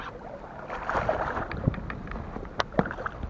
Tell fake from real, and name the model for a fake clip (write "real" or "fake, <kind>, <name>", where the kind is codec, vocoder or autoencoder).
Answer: real